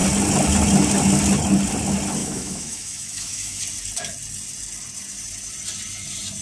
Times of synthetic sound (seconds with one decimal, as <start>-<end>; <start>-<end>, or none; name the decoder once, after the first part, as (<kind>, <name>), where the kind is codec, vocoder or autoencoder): 2.2-3.6 (autoencoder, DAC-VAE)